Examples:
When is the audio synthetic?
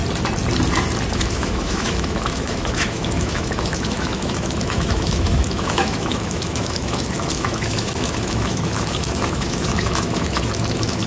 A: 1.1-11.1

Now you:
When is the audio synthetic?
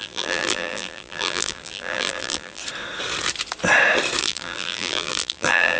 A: 0.0-2.6; 4.2-5.8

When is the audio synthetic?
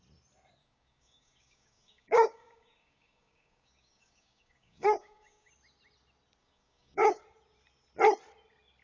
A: 0.6-5.5; 6.4-7.2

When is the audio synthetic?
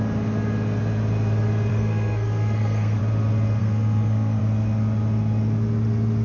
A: 1.7-3.0; 3.6-4.4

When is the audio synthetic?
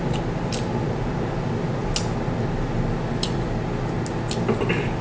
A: none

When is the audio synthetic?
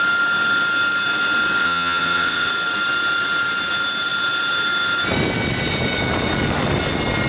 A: 1.6-2.5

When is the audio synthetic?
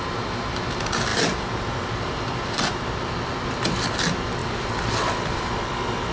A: 4.4-5.5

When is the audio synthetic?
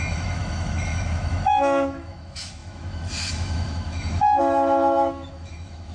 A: 0.0-5.9